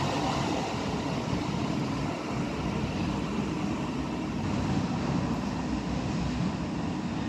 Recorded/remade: recorded